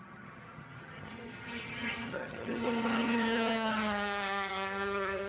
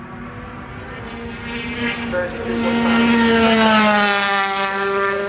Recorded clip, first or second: second